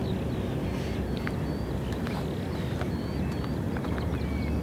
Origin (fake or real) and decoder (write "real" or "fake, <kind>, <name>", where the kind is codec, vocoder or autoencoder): real